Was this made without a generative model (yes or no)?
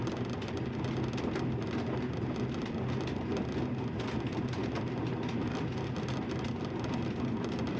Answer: yes